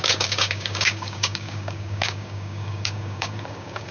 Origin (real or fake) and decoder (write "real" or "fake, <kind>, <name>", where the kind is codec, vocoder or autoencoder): fake, codec, DAC